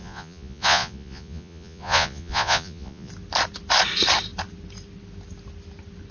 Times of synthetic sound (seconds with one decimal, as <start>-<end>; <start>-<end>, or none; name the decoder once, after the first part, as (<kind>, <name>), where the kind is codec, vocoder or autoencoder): 0.0-3.1 (vocoder, Vocos)